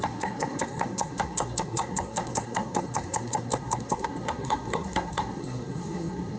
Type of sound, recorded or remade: remade